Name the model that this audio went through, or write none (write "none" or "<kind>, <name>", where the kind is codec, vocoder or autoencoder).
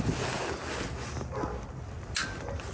none